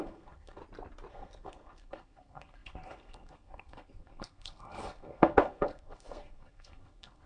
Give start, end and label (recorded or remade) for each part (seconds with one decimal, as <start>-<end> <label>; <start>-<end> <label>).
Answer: 0.0-0.6 remade; 0.6-1.1 recorded; 1.1-7.3 remade